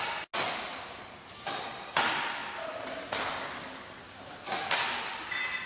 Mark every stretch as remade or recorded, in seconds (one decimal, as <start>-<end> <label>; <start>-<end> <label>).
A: 0.0-5.7 recorded